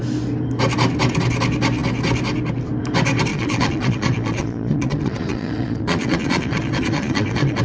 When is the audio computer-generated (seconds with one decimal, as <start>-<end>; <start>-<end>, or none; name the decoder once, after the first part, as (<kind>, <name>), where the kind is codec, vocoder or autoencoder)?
3.3-7.6 (vocoder, Vocos)